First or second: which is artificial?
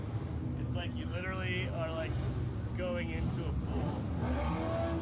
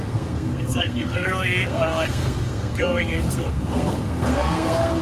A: second